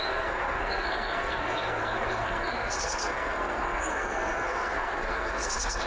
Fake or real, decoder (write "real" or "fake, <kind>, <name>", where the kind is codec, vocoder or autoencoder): fake, codec, SNAC